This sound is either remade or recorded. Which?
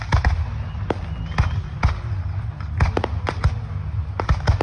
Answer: recorded